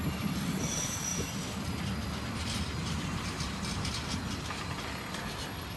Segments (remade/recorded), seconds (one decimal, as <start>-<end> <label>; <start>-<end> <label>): 0.0-5.8 recorded